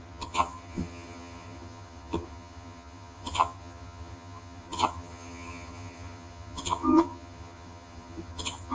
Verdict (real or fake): fake